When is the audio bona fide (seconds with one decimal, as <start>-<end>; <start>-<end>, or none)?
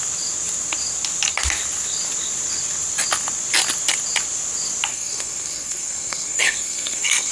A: 0.0-4.9